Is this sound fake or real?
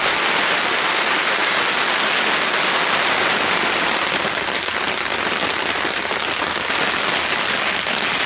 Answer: real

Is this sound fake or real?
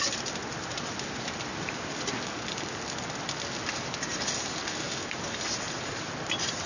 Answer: real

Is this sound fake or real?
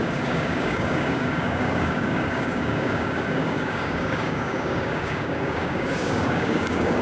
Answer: fake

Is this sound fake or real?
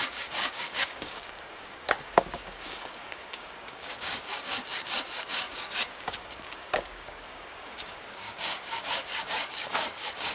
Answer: fake